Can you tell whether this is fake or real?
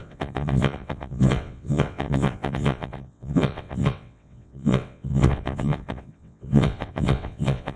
fake